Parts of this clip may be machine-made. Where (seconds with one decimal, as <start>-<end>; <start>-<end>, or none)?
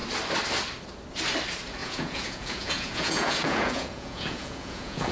1.8-5.1